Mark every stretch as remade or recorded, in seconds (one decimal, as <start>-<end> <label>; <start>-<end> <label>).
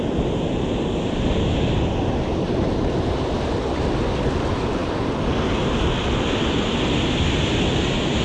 0.0-8.2 recorded